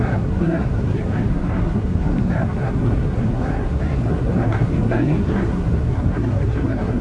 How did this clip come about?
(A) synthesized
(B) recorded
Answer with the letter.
A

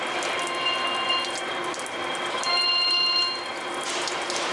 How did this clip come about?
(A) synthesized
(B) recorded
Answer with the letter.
B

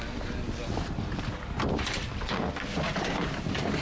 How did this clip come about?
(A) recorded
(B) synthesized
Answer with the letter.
A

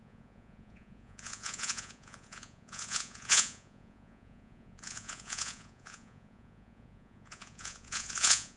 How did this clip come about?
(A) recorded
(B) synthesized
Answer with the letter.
B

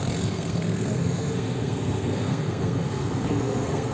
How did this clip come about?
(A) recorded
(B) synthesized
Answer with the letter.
B